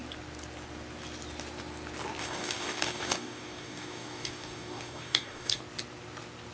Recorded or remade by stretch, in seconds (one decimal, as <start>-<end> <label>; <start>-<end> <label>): 0.0-2.2 recorded; 2.2-5.6 remade; 5.6-6.5 recorded